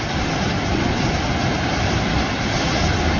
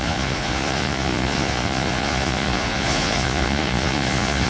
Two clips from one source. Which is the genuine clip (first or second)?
first